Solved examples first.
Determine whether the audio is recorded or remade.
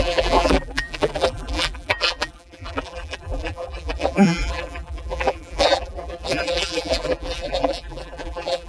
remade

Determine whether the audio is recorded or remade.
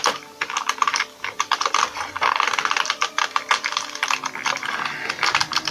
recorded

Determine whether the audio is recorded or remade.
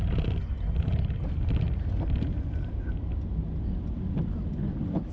recorded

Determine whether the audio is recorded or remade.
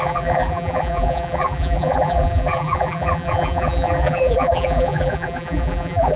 remade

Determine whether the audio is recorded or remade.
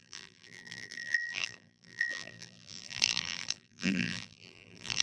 remade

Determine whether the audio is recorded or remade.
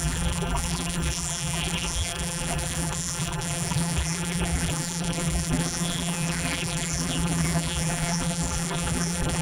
remade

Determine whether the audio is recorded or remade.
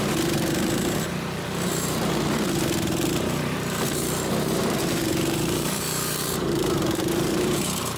remade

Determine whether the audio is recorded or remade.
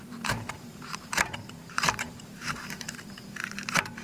remade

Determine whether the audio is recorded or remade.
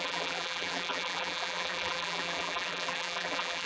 remade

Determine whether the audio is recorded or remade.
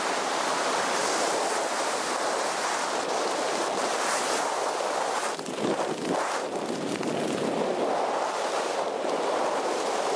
remade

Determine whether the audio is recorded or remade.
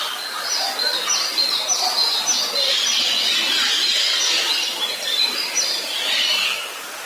remade